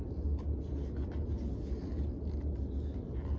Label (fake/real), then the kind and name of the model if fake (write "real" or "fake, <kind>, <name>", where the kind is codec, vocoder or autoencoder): real